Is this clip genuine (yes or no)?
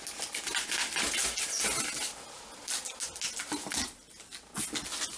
yes